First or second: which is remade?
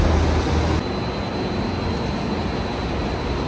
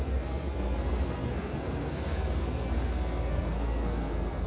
second